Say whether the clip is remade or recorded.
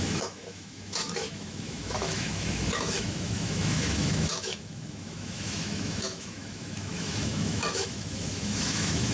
remade